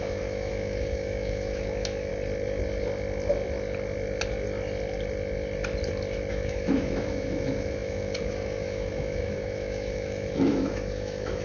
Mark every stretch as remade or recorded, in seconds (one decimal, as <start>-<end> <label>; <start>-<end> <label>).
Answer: 0.0-2.1 remade; 2.1-6.3 recorded; 6.3-11.4 remade